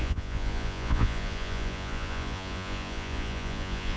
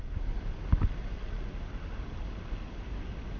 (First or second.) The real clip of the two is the second